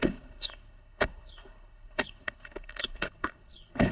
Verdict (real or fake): fake